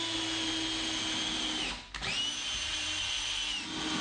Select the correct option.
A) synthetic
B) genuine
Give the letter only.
B